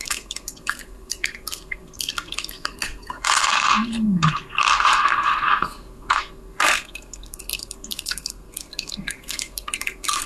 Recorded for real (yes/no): no